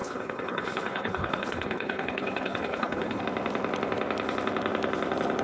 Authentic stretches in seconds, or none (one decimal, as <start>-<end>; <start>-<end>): 3.2-5.4